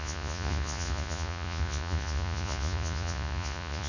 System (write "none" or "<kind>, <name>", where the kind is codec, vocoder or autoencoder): vocoder, Vocos